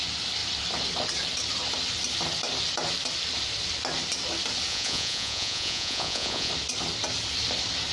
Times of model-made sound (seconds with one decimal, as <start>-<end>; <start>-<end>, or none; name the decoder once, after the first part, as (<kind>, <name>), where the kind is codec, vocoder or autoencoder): 4.7-6.5 (vocoder, Vocos)